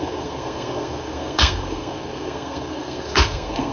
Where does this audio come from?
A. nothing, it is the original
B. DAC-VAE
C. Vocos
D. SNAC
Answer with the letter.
D